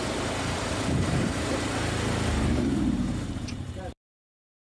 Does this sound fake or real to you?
fake